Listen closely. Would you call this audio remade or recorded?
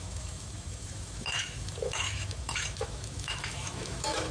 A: remade